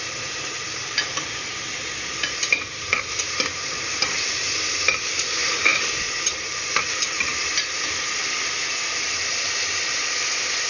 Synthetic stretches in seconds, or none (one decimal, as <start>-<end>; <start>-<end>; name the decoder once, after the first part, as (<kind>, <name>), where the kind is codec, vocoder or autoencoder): 0.0-10.7 (vocoder, BigVGAN v2)